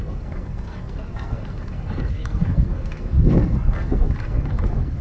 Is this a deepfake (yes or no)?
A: yes